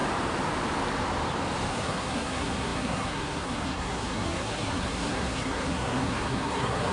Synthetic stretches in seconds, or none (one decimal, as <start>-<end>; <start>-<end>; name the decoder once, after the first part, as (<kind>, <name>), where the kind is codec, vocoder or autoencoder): 1.7-6.9 (codec, SNAC)